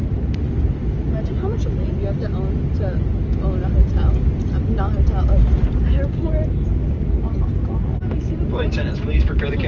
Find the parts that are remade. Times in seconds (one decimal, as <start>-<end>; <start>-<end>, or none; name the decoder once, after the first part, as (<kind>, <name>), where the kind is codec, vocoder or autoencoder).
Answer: none

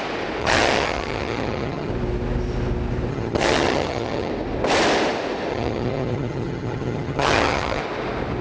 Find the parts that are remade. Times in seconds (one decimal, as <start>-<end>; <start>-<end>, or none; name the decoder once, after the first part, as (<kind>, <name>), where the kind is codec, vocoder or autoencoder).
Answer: 0.4-1.9 (vocoder, HiFi-GAN); 3.1-4.3; 5.5-7.8

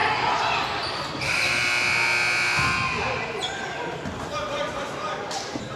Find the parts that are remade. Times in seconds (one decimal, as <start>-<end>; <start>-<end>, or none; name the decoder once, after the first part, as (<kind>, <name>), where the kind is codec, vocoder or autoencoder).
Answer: none

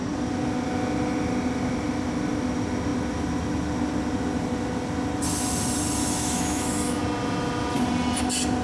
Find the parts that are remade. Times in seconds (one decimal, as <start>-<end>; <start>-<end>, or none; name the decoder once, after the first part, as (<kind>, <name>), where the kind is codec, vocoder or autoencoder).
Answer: 6.0-7.0 (autoencoder, DAC-VAE)

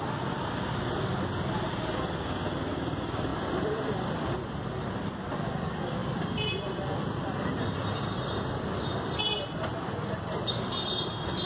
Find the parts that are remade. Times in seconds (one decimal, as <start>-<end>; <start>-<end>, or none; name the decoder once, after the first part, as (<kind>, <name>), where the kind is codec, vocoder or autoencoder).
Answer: 3.3-4.6 (vocoder, BigVGAN v2); 6.0-10.3